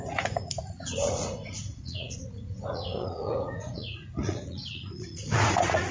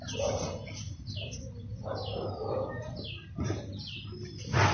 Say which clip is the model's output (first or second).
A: first